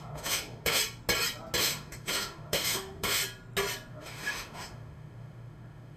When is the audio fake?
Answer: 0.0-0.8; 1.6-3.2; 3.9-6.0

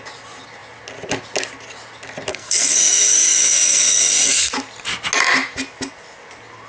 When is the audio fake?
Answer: 2.3-4.5

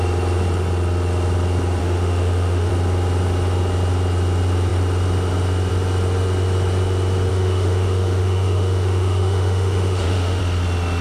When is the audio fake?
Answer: 1.8-2.7; 7.3-10.4

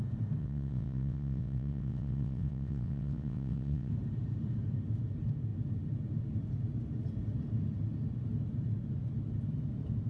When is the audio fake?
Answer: 0.4-3.9

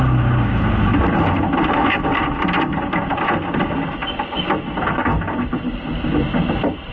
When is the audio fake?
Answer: none